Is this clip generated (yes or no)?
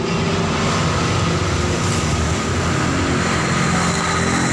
no